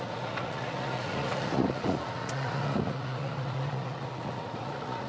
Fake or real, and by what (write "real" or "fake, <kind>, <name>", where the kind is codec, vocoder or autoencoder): fake, vocoder, Vocos